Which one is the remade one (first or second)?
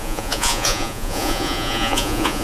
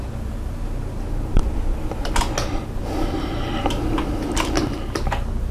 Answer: first